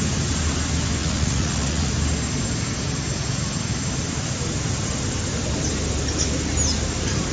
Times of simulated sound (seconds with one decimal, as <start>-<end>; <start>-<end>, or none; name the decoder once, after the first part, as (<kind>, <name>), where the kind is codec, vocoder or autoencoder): 1.0-1.9 (vocoder, Vocos)